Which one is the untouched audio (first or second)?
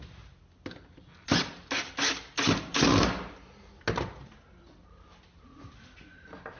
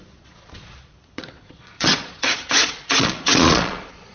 first